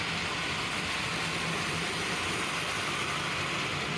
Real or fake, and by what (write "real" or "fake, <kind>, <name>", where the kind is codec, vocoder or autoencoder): real